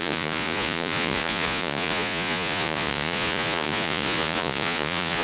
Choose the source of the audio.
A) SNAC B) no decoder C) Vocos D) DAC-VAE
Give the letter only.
C